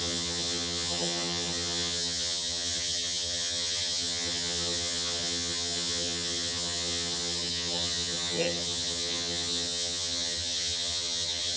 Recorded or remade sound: remade